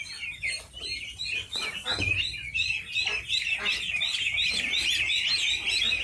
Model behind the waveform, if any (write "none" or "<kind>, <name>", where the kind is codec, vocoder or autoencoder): none